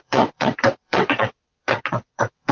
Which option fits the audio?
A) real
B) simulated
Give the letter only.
B